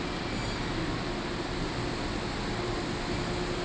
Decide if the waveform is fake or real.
real